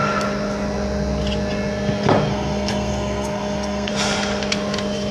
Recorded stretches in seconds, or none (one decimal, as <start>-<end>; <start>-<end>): 0.0-2.3; 3.9-5.1